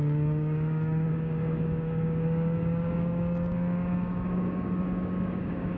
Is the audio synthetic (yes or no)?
yes